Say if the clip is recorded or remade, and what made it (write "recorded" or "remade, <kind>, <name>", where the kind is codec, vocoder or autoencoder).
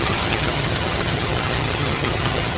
remade, vocoder, HiFi-GAN